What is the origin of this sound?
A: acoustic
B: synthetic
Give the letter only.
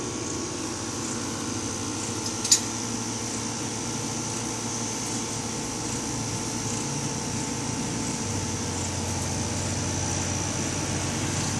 A